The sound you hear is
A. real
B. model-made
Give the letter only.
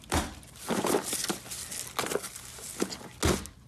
A